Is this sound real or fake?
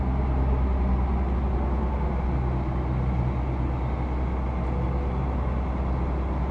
real